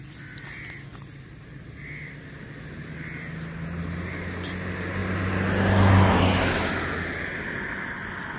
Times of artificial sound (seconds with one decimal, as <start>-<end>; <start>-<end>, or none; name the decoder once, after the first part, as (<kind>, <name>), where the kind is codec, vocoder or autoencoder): 0.9-1.6 (vocoder, BigVGAN v2)